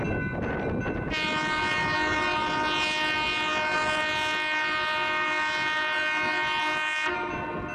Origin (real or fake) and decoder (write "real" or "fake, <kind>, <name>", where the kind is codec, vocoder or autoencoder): real